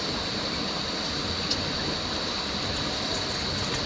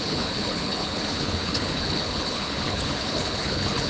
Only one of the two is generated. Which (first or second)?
second